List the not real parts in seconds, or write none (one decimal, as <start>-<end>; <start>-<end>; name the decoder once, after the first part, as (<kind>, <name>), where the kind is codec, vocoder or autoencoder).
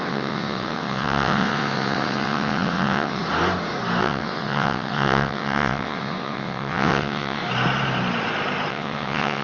0.0-3.2 (vocoder, WaveNeXt); 4.0-7.4; 8.7-9.4